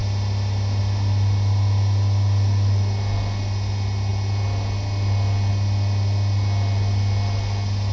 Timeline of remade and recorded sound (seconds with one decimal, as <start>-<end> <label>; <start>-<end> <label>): 0.0-7.9 recorded